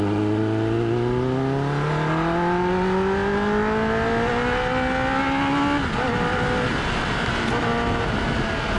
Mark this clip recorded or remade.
recorded